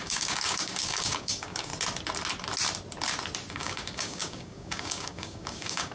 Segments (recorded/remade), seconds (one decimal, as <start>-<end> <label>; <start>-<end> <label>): 0.0-1.7 remade; 1.7-3.5 recorded; 3.5-5.9 remade